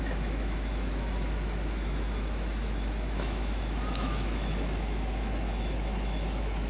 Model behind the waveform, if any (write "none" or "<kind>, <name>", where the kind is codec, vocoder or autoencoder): autoencoder, DAC-VAE